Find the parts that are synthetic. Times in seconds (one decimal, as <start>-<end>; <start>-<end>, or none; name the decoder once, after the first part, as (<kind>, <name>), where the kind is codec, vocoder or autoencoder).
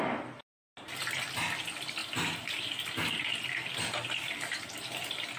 none